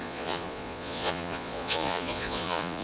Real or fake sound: fake